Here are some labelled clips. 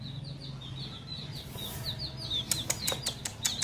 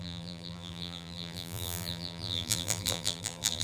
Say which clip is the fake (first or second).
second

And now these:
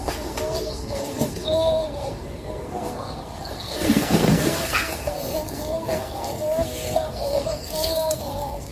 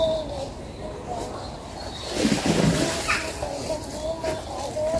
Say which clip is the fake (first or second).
first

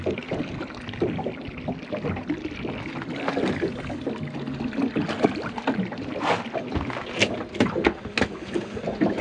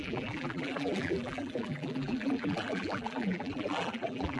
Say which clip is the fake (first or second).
second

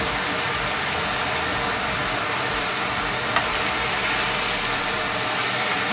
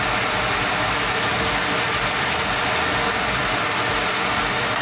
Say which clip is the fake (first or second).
first